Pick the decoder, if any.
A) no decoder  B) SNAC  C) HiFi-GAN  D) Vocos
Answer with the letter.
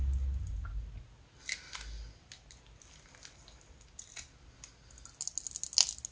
A